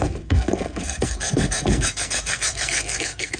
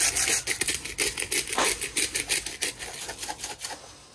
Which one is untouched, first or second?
second